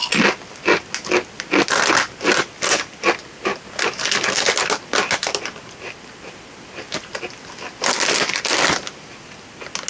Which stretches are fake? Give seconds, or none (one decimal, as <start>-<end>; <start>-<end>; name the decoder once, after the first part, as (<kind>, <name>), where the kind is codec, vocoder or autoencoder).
none